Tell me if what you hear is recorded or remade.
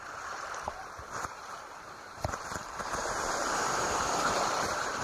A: remade